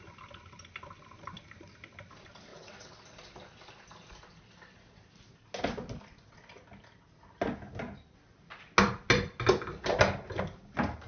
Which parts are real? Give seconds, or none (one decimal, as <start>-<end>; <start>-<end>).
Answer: 0.0-2.5; 3.0-11.1